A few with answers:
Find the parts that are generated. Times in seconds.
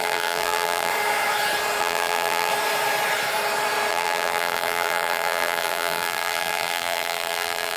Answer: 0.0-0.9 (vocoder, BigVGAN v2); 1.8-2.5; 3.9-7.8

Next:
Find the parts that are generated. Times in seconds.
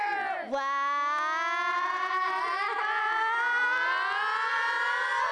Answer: 1.7-2.5 (vocoder, Vocos)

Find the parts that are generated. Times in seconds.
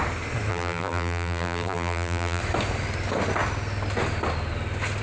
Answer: 0.5-2.4 (vocoder, BigVGAN v2)